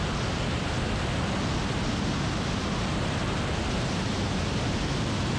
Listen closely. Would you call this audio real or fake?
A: real